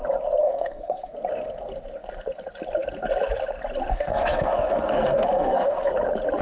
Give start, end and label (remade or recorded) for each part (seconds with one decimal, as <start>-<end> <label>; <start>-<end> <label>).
0.0-0.4 recorded; 0.4-1.1 remade; 1.1-3.9 recorded; 3.9-5.9 remade; 5.9-6.4 recorded

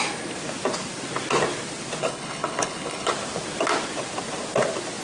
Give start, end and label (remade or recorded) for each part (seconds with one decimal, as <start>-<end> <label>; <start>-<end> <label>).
0.0-2.0 recorded; 2.0-3.1 remade; 3.1-5.0 recorded

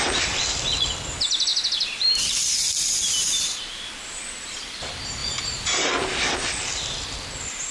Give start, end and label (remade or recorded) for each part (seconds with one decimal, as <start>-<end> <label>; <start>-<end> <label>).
0.0-5.2 recorded; 5.2-5.9 remade; 5.9-7.7 recorded

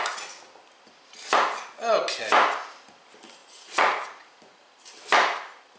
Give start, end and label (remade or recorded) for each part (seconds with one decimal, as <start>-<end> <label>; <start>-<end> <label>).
0.0-3.4 recorded; 3.4-4.7 remade; 4.7-5.8 recorded

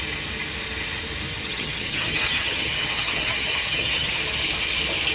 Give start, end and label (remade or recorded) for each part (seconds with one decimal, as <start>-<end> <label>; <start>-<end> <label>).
0.0-1.3 recorded; 1.3-4.2 remade; 4.2-5.1 recorded

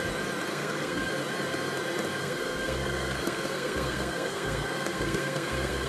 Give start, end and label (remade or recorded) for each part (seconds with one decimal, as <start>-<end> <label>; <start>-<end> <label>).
0.0-0.5 recorded; 0.5-1.1 remade; 1.1-2.2 recorded; 2.2-5.9 remade

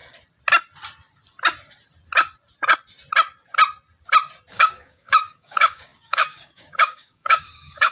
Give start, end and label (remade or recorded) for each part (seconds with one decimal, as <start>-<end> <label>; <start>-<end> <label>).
0.0-4.5 recorded; 4.5-7.9 remade